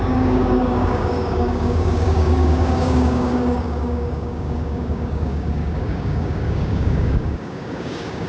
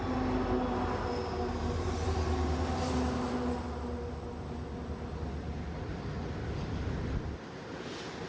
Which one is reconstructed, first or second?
first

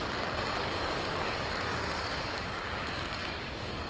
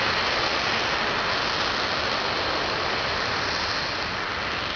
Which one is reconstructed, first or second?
first